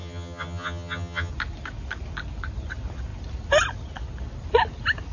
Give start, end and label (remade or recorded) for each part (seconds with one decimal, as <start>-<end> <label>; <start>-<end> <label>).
0.0-1.3 remade; 1.3-5.1 recorded